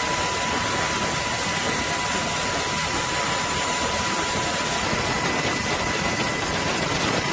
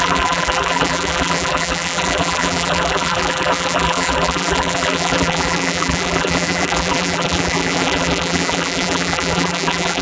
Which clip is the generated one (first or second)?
second